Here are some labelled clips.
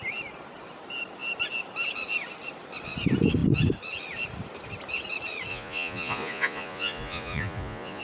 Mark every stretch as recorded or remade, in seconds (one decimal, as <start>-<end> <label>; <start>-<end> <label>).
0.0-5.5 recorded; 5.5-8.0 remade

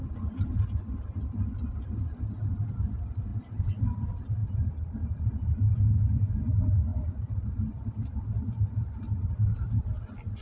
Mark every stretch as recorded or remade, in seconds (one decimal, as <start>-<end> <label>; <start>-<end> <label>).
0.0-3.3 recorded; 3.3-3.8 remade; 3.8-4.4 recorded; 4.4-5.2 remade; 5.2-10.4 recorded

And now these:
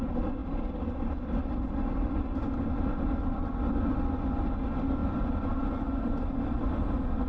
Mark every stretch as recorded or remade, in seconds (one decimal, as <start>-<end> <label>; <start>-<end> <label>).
0.0-7.3 recorded

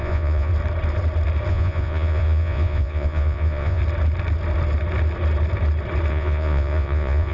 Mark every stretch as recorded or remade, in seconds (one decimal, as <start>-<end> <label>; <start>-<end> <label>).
0.0-0.5 remade; 0.5-1.5 recorded; 1.5-3.8 remade; 3.8-6.1 recorded; 6.1-7.3 remade

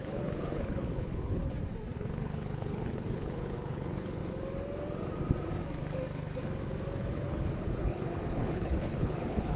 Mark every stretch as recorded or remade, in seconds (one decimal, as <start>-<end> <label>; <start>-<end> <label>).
0.0-1.4 remade; 1.4-2.0 recorded; 2.0-4.2 remade; 4.2-7.0 recorded; 7.0-9.6 remade